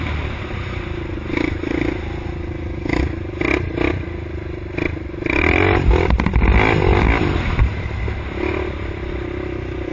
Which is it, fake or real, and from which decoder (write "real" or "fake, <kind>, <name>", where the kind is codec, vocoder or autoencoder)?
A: real